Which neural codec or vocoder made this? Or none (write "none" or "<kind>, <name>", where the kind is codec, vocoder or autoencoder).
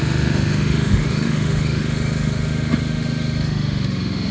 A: autoencoder, DAC-VAE